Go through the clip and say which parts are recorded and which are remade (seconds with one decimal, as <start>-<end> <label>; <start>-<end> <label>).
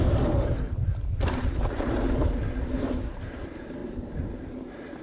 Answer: 0.0-5.0 remade